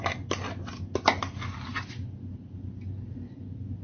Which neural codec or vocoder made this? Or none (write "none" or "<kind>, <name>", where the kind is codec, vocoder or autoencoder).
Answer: none